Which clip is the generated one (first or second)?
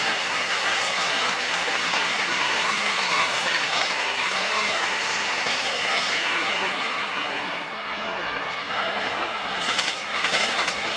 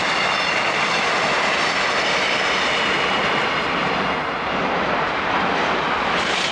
first